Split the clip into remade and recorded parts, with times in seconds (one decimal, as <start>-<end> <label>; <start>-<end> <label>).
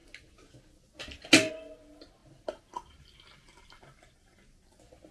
0.0-5.1 recorded